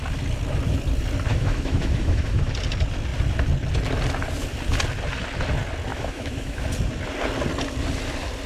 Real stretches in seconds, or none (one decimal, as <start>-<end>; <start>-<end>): 0.0-1.3; 2.5-5.9; 6.6-8.5

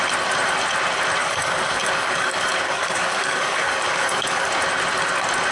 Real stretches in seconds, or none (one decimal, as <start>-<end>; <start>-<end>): 0.0-1.2; 4.5-5.5

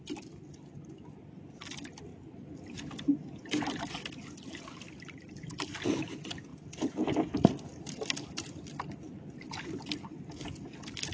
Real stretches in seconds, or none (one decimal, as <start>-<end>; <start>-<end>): 0.0-11.1

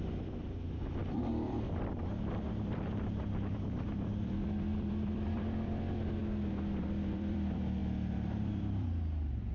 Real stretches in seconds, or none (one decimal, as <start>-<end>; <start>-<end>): 6.2-6.8

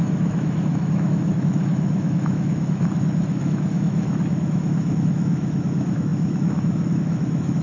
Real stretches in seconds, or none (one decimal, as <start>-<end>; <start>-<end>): none

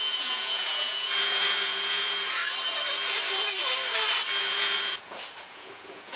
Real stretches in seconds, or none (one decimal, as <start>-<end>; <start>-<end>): 2.4-4.4